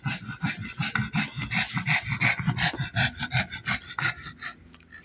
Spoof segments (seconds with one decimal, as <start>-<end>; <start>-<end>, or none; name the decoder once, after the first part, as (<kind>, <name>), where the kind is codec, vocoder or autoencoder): none